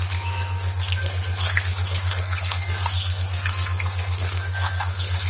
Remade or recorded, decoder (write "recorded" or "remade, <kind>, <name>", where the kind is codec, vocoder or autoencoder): remade, codec, SNAC